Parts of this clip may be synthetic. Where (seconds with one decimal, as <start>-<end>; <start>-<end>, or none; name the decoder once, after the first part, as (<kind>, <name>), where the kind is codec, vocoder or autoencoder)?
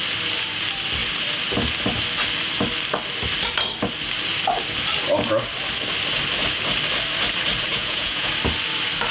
7.7-8.3 (vocoder, Vocos)